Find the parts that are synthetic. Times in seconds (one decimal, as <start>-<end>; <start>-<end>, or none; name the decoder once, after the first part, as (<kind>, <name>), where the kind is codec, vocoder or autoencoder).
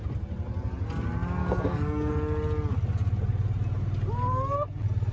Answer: 1.4-2.1 (codec, DAC)